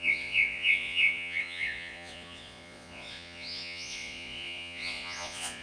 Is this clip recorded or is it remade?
remade